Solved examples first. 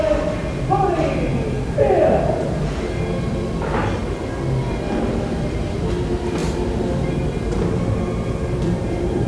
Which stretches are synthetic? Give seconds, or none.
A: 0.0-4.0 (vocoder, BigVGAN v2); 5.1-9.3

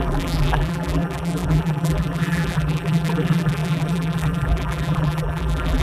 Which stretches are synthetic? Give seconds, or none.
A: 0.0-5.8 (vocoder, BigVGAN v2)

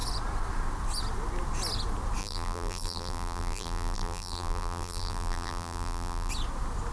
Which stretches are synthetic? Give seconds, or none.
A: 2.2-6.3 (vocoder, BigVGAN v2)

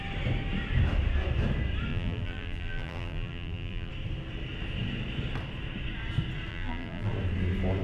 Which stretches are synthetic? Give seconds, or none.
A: 1.9-3.9 (vocoder, BigVGAN v2); 6.5-7.1

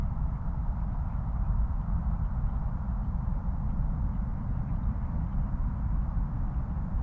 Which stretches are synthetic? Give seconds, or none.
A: 0.0-7.0 (vocoder, BigVGAN v2)